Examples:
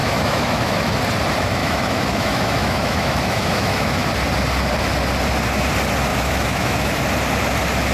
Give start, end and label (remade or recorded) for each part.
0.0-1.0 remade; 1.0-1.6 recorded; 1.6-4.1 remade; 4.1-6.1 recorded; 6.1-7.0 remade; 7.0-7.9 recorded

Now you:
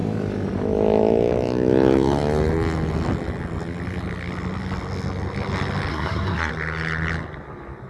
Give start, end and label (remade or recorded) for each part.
0.0-5.9 recorded; 5.9-6.5 remade; 6.5-7.9 recorded

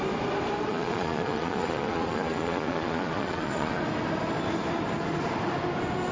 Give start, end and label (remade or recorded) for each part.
0.0-0.7 recorded; 0.7-3.8 remade; 3.8-6.1 recorded

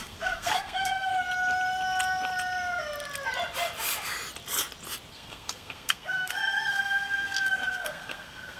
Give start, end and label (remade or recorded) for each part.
0.0-1.1 remade; 1.1-5.1 recorded; 5.1-8.6 remade

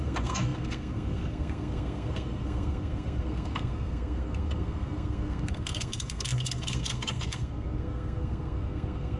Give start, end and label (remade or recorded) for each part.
0.0-9.2 remade

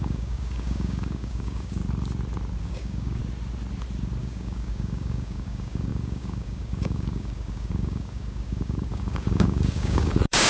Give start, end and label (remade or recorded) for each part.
0.0-1.8 remade; 1.8-2.6 recorded; 2.6-3.2 remade; 3.2-4.2 recorded; 4.2-10.5 remade

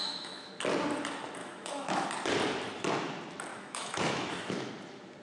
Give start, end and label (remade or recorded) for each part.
0.0-0.5 remade; 0.5-1.4 recorded; 1.4-2.1 remade; 2.1-3.5 recorded; 3.5-4.7 remade; 4.7-5.2 recorded